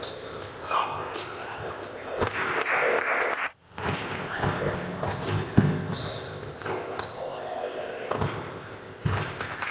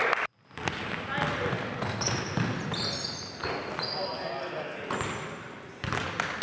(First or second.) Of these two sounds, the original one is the second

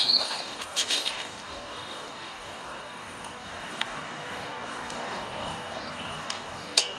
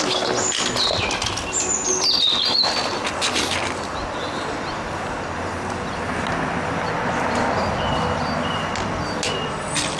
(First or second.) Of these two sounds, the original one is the second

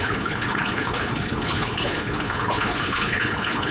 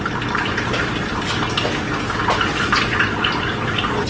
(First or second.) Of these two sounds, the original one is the second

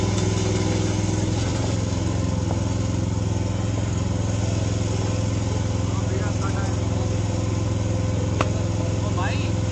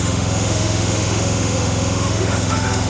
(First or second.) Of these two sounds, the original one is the first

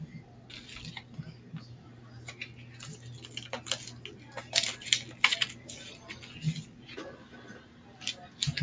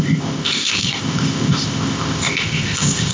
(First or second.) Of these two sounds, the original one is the first